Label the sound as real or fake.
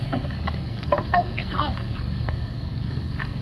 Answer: fake